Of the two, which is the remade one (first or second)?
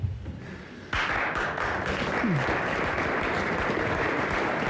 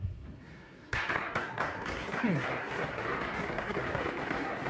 second